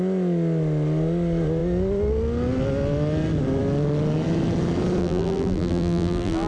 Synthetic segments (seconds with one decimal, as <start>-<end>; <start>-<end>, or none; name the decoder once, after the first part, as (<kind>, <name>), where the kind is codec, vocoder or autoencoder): 5.0-6.5 (vocoder, BigVGAN v2)